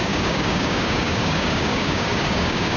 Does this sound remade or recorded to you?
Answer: remade